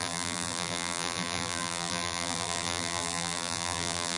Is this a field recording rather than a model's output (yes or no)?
no